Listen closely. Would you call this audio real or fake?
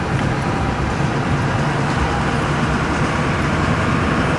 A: real